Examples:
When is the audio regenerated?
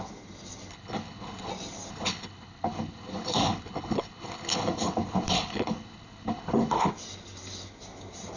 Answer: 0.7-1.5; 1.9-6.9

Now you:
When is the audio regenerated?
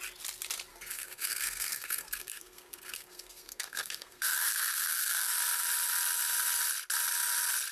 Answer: 0.7-5.3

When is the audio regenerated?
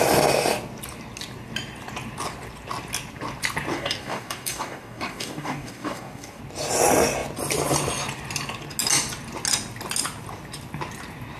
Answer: 3.7-6.4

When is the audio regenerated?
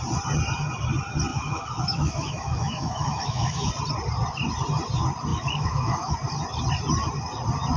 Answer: 1.3-3.7; 5.3-6.1